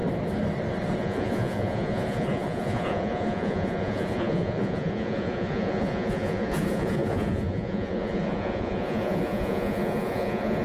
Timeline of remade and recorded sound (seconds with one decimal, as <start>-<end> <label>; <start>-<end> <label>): 0.0-1.0 recorded; 1.0-10.6 remade